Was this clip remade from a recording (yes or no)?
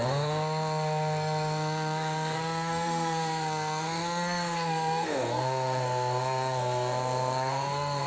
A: yes